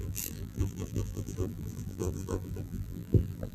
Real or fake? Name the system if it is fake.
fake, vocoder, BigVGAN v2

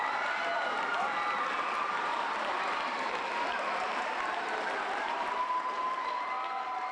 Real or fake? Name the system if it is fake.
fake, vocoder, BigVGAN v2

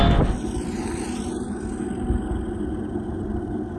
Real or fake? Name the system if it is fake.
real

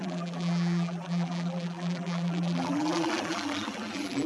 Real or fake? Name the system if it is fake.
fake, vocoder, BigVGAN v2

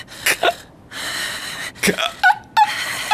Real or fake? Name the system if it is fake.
real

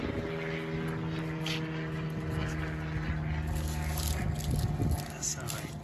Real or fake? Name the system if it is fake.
real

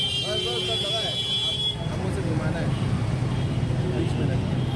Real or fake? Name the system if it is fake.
real